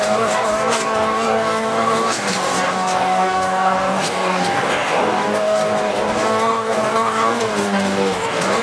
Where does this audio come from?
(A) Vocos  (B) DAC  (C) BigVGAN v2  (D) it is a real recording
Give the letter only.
B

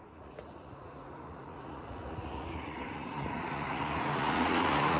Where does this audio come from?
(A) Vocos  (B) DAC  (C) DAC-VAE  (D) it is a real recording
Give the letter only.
A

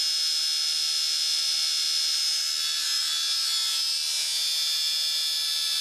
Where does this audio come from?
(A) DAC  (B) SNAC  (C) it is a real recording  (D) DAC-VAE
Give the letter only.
C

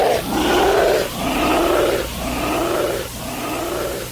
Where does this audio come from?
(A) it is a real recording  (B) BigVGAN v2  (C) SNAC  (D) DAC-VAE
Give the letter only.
A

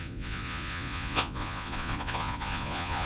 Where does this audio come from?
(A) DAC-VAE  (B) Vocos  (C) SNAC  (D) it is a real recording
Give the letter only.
B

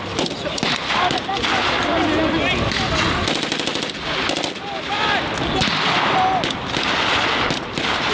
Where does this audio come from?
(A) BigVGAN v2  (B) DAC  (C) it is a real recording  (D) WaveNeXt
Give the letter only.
C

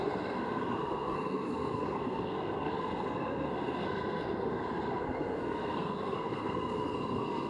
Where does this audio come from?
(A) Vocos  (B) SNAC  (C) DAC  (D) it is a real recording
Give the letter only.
B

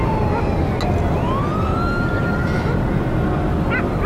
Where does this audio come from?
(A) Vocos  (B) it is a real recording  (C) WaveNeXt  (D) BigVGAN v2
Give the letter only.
B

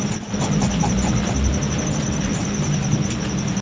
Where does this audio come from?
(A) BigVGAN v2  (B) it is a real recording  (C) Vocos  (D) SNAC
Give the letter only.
B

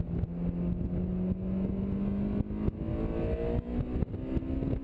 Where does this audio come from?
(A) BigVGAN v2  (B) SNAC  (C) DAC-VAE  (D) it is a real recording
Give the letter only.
D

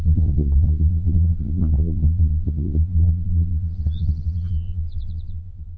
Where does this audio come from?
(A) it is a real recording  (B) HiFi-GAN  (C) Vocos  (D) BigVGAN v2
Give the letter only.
C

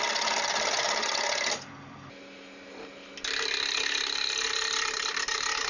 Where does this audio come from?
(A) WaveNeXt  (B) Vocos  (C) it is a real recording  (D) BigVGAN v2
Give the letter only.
C